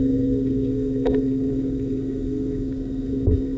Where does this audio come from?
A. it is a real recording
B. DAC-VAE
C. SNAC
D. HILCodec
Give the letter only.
C